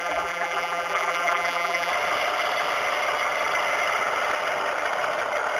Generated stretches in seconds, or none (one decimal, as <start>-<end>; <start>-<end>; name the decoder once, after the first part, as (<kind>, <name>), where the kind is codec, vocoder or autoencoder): 0.0-1.9 (vocoder, BigVGAN v2)